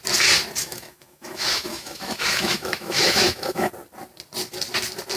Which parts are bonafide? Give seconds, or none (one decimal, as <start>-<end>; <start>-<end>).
0.0-0.6; 3.7-5.2